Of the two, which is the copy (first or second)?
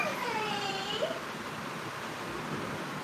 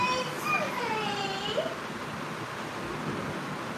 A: first